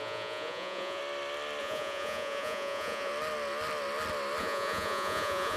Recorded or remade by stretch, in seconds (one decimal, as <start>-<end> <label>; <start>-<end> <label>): 0.0-1.0 remade; 1.0-1.6 recorded; 1.6-3.1 remade; 3.1-4.4 recorded; 4.4-5.6 remade